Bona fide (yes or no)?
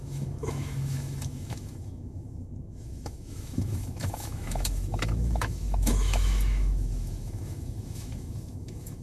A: no